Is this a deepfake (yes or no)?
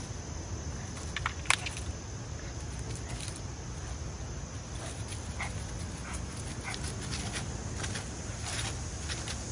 no